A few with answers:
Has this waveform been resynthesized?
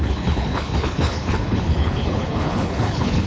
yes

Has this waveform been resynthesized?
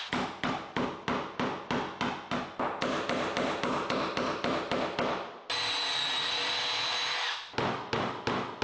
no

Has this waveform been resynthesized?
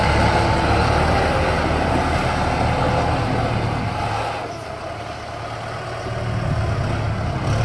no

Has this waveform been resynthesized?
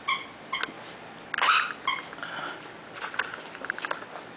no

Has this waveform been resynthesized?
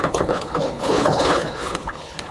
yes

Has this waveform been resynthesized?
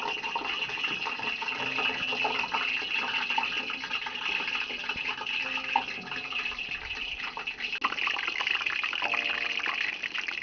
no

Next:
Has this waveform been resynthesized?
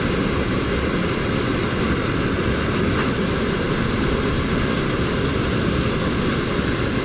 no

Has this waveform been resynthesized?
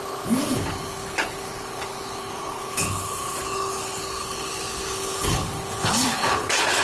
yes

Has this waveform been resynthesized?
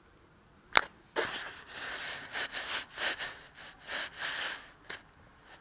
no